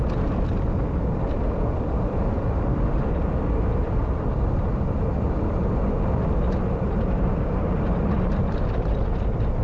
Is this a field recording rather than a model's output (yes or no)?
no